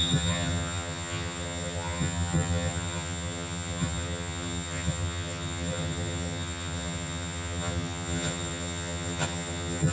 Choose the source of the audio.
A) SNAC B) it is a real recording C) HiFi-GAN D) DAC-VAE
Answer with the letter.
C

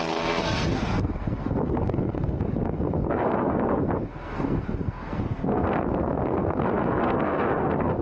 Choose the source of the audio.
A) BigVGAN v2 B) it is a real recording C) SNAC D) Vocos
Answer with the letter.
C